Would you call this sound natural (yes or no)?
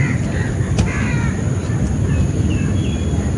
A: yes